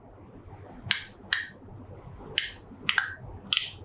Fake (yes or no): no